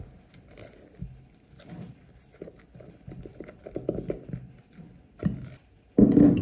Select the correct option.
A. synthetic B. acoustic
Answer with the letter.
B